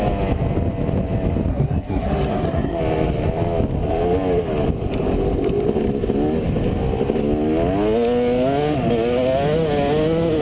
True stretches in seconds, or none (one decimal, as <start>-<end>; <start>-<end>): 0.0-1.5; 2.8-10.4